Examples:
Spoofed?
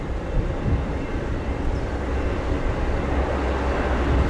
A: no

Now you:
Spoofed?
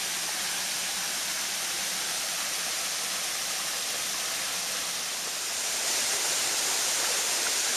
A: no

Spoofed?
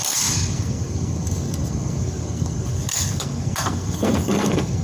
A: yes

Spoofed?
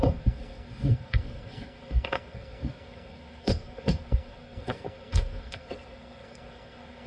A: yes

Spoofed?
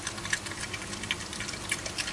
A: no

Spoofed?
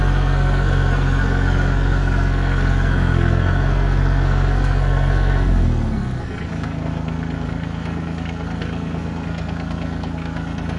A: yes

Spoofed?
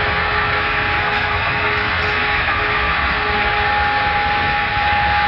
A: yes